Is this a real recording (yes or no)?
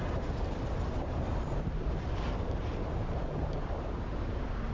no